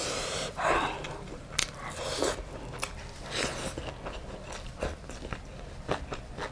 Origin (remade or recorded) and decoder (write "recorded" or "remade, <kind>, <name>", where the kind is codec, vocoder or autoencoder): recorded